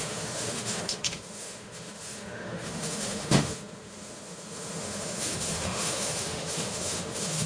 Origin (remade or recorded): remade